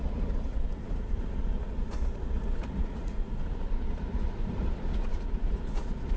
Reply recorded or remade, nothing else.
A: remade